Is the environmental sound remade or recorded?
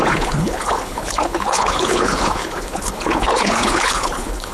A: remade